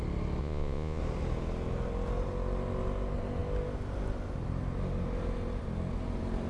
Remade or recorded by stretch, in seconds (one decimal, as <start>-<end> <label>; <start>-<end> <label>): 0.0-0.4 recorded; 0.4-1.0 remade; 1.0-6.5 recorded

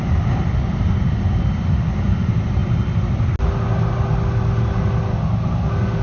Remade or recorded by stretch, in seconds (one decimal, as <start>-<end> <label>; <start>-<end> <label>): 0.0-6.0 recorded

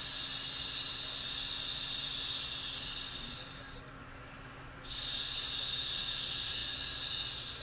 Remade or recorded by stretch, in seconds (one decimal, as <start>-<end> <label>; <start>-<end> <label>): 0.0-7.6 recorded

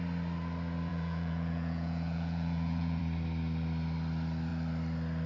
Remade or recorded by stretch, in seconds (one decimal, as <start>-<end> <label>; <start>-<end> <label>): 0.0-0.9 recorded; 0.9-3.0 remade; 3.0-5.3 recorded

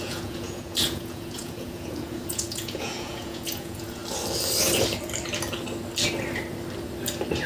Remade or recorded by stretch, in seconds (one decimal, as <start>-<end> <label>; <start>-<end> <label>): 0.0-4.0 remade; 4.0-7.5 recorded